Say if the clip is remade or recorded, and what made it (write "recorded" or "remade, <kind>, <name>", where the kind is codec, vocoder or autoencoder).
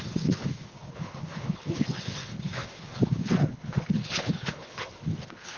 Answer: remade, codec, HILCodec